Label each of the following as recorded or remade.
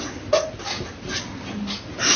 recorded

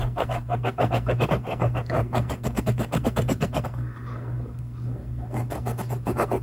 remade